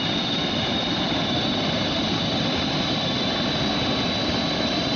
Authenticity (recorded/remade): recorded